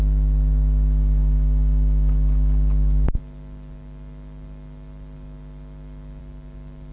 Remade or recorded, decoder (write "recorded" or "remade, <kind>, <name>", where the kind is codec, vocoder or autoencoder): recorded